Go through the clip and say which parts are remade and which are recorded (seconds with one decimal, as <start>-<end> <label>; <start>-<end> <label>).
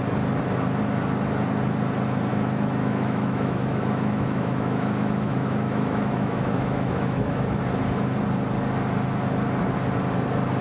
0.0-2.3 recorded; 2.3-7.6 remade; 7.6-10.6 recorded